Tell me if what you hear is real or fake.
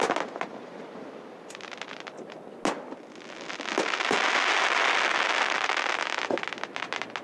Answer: real